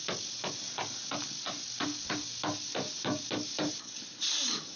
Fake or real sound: real